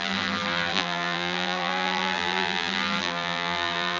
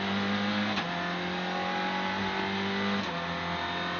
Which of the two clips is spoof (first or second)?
first